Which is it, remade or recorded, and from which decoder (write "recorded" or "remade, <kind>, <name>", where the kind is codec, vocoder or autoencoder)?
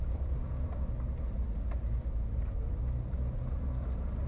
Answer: remade, vocoder, BigVGAN v2